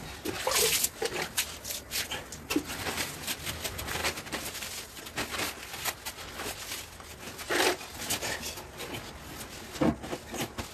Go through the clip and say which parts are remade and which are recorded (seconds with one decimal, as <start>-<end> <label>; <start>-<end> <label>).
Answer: 0.0-10.7 recorded